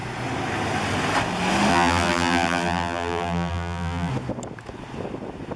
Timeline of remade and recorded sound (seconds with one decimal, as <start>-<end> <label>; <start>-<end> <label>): 0.0-1.7 recorded; 1.7-4.1 remade; 4.1-5.6 recorded